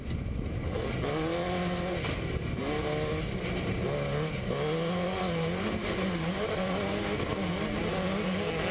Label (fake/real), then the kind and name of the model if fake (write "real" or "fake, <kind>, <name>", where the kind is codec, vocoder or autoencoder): real